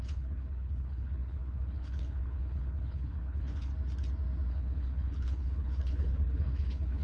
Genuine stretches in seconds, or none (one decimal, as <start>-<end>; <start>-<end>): 3.7-4.5